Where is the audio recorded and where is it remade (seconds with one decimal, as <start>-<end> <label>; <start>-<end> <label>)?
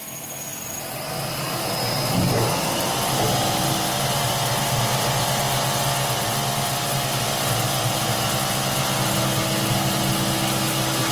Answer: 0.0-3.4 recorded; 3.4-5.8 remade; 5.8-11.1 recorded